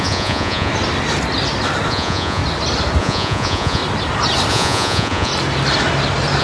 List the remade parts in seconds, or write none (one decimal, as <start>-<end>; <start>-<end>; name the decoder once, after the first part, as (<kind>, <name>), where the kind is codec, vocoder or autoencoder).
0.0-0.7 (vocoder, Vocos); 1.9-2.4; 3.0-3.8; 4.5-5.3